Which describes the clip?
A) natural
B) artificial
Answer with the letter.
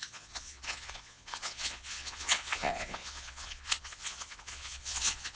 B